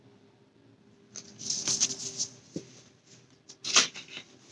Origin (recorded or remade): recorded